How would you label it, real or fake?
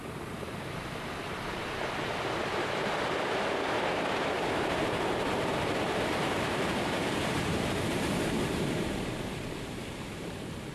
fake